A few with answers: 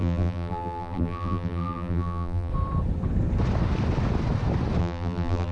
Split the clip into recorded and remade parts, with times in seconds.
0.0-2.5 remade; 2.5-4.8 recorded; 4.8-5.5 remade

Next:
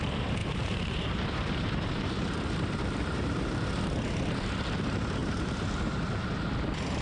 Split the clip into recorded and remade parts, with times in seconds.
0.0-0.4 recorded; 0.4-3.8 remade; 3.8-5.2 recorded; 5.2-5.9 remade; 5.9-7.0 recorded

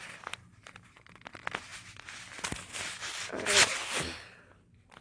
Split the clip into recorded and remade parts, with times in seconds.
0.0-5.0 recorded

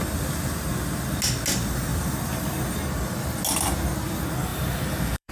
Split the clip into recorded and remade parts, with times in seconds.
0.0-4.5 recorded; 4.5-5.3 remade

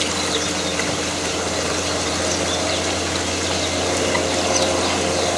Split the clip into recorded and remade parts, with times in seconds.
0.0-0.7 recorded; 0.7-2.2 remade; 2.2-5.4 recorded

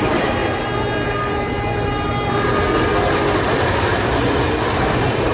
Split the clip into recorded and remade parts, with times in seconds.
0.0-5.3 recorded

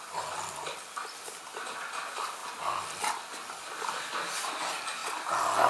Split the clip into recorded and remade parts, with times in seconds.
0.0-5.7 recorded

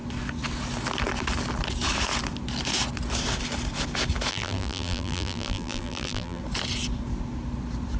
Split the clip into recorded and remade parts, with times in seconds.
0.0-4.3 recorded; 4.3-6.4 remade; 6.4-8.0 recorded